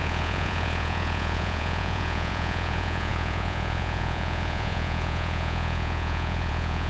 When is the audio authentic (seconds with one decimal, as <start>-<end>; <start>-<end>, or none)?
none